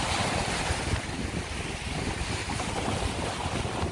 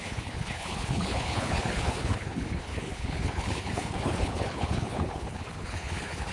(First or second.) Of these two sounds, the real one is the first